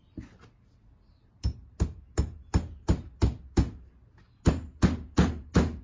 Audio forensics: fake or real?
real